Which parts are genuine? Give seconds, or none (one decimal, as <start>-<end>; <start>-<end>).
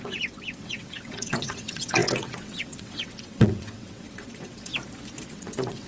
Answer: 4.7-5.3